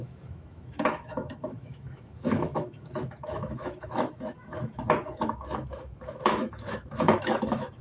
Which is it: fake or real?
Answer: fake